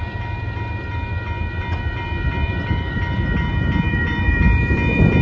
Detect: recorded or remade remade